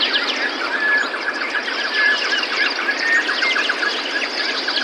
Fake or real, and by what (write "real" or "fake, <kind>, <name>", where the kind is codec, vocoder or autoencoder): real